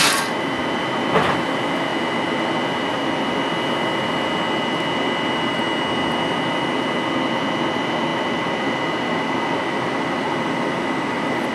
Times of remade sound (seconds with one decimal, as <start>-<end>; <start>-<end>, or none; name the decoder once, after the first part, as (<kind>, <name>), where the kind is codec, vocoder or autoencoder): none